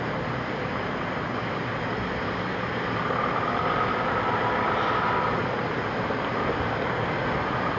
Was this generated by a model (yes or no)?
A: no